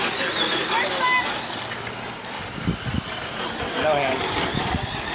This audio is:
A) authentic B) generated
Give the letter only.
A